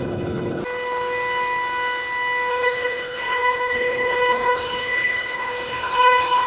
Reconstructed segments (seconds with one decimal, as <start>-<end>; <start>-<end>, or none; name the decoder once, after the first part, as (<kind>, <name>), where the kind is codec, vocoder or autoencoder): 0.0-0.6 (codec, HILCodec); 2.5-6.5